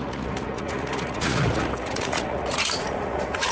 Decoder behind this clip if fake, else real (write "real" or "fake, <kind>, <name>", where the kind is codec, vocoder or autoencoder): fake, vocoder, Vocos